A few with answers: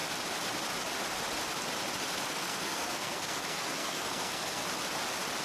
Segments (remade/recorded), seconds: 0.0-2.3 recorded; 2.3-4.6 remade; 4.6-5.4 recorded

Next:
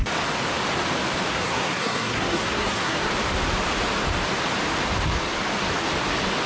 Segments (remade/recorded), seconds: 0.0-1.3 recorded; 1.3-3.1 remade; 3.1-6.5 recorded

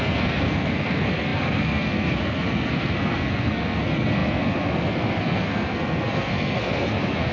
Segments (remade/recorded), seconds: 0.0-7.3 remade

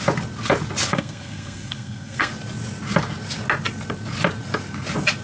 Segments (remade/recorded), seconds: 0.0-0.9 recorded; 0.9-2.3 remade; 2.3-5.2 recorded